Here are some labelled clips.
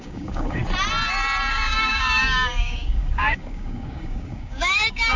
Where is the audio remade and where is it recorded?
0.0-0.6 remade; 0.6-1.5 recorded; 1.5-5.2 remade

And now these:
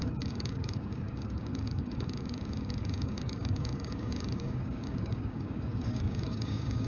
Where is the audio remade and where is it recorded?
0.0-6.9 remade